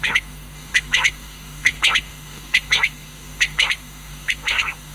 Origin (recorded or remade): remade